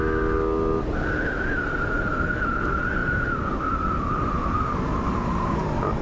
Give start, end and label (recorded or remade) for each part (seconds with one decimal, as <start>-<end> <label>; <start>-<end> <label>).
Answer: 0.0-6.0 recorded